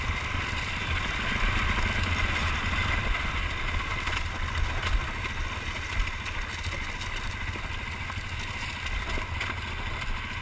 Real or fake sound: real